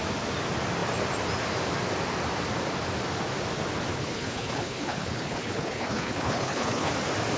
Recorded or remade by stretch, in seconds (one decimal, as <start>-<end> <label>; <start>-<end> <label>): 0.0-3.9 recorded; 3.9-6.9 remade; 6.9-7.4 recorded